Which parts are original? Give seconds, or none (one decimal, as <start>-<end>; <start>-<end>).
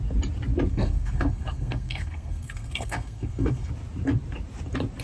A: 0.0-0.7; 3.7-5.0